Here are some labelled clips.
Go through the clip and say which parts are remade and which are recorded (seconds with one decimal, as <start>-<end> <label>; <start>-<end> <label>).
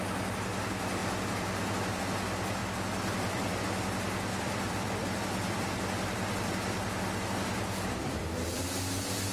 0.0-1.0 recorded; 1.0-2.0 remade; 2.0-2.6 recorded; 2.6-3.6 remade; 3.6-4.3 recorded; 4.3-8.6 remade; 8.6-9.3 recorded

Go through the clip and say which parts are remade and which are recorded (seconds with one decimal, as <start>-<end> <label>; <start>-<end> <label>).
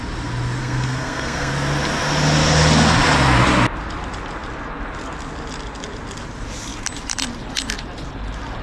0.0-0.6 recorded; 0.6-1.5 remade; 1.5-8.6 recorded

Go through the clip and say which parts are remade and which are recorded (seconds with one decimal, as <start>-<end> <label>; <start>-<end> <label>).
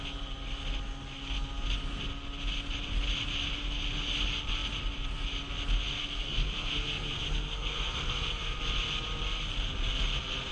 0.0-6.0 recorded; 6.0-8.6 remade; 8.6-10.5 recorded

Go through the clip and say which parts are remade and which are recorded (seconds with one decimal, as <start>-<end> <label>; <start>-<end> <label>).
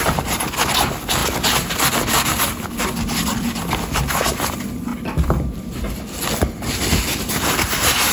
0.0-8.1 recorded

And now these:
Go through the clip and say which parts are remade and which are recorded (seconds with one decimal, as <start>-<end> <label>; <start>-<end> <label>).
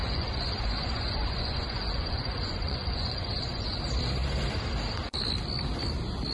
0.0-3.8 remade; 3.8-6.3 recorded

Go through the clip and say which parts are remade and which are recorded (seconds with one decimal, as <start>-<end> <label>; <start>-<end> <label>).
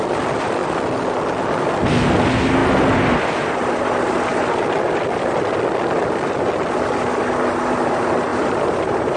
0.0-8.3 recorded; 8.3-9.2 remade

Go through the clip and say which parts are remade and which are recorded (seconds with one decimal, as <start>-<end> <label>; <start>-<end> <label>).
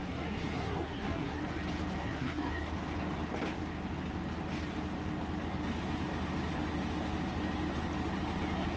0.0-1.4 remade; 1.4-2.0 recorded; 2.0-2.7 remade; 2.7-8.8 recorded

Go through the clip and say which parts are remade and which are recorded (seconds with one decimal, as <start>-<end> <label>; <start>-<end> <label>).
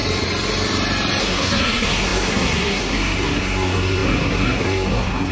0.0-1.2 recorded; 1.2-5.3 remade